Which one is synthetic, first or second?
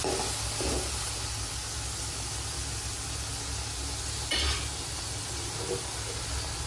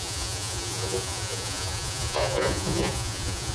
second